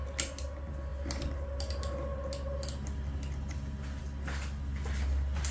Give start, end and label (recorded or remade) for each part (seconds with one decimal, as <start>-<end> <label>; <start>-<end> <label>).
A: 0.0-5.5 recorded